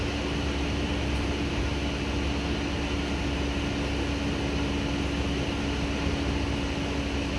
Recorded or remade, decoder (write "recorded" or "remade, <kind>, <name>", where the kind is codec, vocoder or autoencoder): recorded